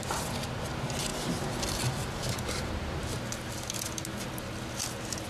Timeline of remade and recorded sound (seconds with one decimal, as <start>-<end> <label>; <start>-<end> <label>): 0.0-5.3 recorded